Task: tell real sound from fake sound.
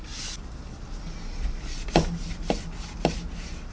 real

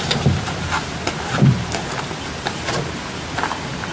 real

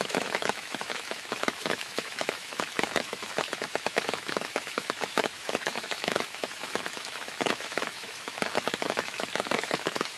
fake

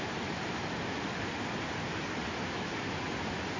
real